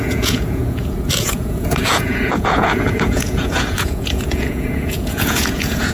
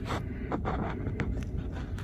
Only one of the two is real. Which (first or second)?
second